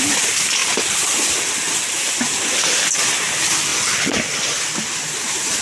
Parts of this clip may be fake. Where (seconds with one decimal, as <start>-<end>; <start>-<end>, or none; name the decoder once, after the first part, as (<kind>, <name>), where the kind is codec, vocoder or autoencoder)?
none

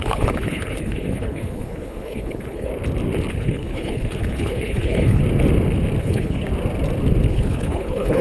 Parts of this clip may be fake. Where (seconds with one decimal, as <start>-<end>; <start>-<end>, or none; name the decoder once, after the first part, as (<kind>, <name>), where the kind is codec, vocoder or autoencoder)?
0.0-2.7 (codec, HILCodec); 3.3-5.2; 6.0-6.5; 7.3-8.2

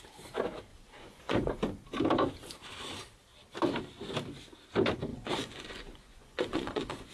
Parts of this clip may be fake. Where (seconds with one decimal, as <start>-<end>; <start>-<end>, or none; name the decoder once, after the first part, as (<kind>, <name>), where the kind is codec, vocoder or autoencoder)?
0.7-1.5 (vocoder, Vocos); 5.1-7.1

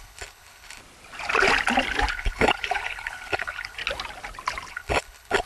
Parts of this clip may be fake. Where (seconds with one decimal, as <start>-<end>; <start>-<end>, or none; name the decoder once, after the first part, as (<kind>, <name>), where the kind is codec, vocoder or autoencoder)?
0.0-0.8 (codec, HILCodec); 2.1-3.8; 4.7-5.5

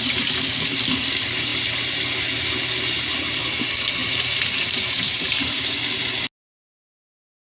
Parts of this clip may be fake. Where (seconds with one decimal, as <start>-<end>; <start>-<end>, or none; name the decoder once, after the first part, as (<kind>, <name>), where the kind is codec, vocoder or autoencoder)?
4.0-5.7 (vocoder, BigVGAN v2)